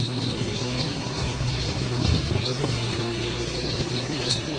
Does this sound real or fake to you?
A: fake